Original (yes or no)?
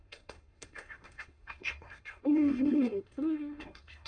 no